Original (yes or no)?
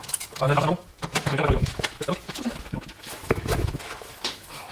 no